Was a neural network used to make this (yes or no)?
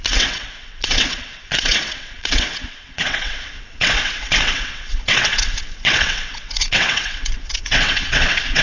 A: yes